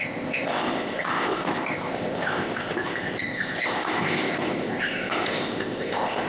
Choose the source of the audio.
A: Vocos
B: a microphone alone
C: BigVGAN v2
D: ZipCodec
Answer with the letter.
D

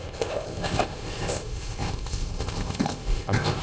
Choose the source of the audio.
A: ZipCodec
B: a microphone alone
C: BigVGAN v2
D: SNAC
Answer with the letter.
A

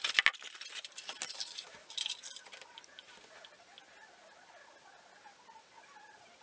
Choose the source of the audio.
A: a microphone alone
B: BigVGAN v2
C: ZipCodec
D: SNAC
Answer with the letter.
A